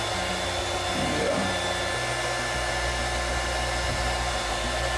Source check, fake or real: real